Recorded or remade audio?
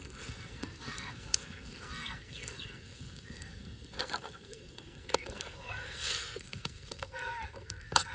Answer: remade